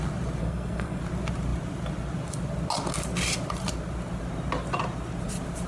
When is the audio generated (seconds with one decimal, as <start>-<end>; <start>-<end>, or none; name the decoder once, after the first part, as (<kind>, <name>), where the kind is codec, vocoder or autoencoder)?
0.4-1.0 (codec, SNAC)